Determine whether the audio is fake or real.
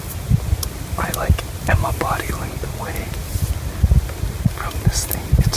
real